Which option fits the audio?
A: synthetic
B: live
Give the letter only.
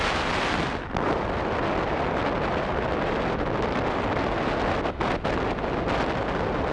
B